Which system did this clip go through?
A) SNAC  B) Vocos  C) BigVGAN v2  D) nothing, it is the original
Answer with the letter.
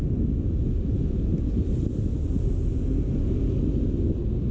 D